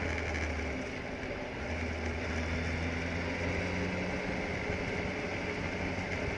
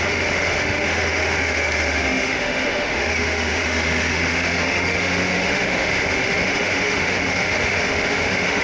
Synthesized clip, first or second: second